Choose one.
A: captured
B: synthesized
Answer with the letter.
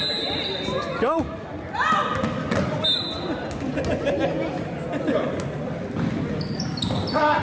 A